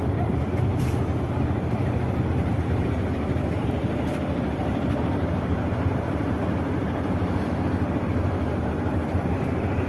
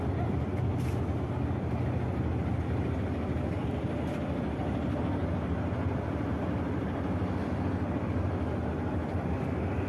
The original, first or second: second